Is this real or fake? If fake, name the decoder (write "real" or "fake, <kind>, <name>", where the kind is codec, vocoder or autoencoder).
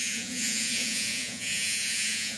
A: fake, vocoder, Vocos